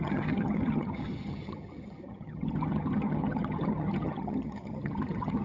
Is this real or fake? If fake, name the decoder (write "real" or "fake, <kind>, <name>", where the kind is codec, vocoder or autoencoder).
fake, vocoder, HiFi-GAN